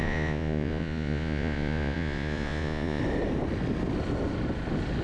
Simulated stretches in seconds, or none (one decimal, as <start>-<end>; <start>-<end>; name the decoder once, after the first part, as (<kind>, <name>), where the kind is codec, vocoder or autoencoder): 0.0-3.0 (vocoder, Vocos)